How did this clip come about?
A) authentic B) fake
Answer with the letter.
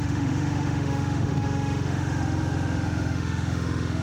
B